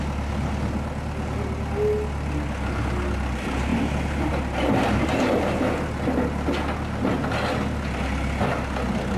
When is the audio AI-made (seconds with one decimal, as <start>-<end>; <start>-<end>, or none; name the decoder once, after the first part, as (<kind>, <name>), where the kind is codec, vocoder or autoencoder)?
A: none